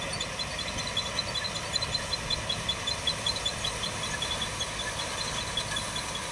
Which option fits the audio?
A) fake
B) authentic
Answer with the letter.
B